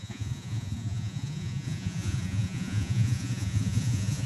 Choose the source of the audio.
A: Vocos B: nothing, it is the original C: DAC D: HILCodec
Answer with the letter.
A